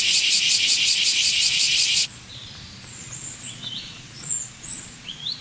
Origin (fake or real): fake